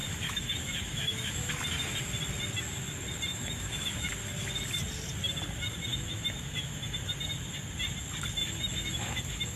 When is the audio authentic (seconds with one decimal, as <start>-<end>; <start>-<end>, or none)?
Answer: 1.5-3.3; 4.1-5.9; 7.0-8.4